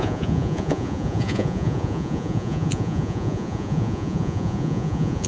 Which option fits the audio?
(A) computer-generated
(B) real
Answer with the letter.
A